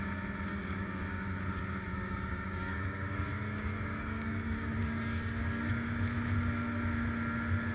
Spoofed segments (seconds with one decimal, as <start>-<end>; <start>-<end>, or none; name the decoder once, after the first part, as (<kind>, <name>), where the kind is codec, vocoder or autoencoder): 0.5-1.4 (codec, DAC); 1.9-5.7